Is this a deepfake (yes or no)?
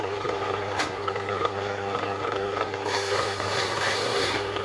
yes